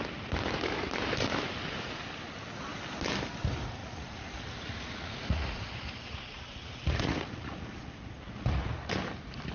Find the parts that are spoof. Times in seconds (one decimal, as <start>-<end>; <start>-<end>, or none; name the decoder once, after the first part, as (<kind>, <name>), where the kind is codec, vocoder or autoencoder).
3.8-8.9 (vocoder, Vocos)